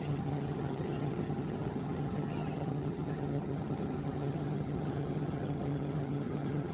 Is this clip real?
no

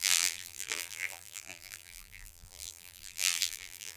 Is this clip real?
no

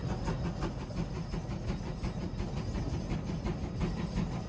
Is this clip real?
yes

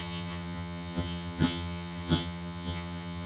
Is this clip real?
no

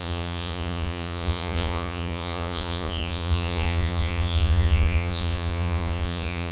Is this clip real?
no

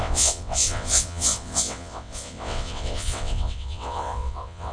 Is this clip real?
no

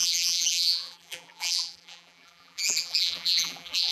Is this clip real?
no